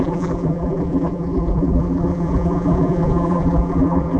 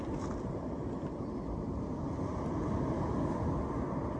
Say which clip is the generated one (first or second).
first